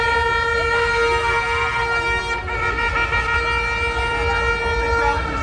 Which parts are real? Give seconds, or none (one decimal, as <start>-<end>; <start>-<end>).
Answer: 0.0-5.4

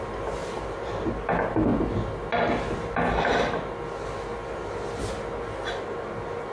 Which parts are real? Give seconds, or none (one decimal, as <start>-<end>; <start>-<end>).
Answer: 0.0-0.4; 1.1-6.5

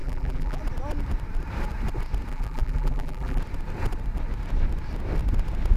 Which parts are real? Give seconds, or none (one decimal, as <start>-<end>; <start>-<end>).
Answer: 0.6-2.3; 3.4-5.8

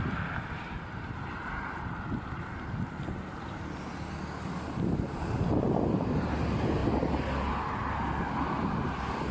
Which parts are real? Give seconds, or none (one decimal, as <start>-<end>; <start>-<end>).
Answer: 0.0-9.3

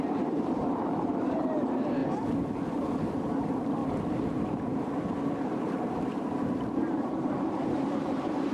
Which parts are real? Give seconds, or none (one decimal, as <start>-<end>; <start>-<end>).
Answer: 2.0-3.4

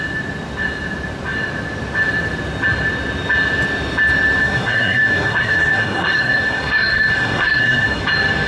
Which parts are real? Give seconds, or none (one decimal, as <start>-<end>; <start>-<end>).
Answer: 0.0-4.4; 8.0-8.5

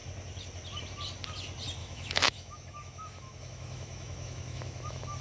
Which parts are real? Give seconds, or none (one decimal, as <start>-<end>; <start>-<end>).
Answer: 0.0-1.8